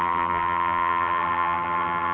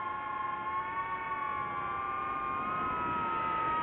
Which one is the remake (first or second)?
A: first